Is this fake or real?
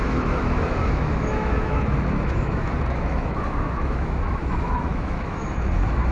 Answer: fake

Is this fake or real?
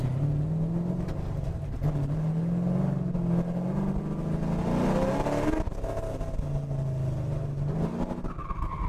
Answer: real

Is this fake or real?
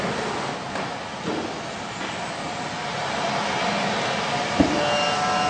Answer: real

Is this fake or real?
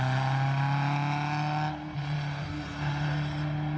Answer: real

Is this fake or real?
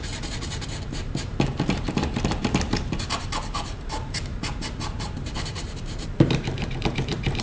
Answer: fake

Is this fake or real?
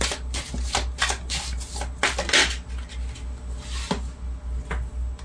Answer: real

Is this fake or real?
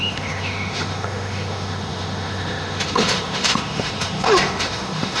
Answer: fake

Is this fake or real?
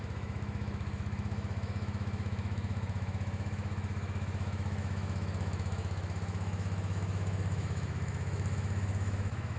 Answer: fake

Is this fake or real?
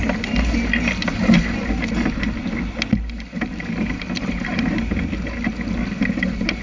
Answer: real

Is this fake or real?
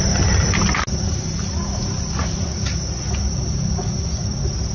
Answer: real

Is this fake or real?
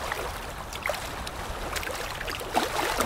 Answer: fake